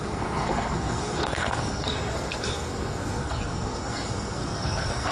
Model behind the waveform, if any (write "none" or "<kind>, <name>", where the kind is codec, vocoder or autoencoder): codec, SNAC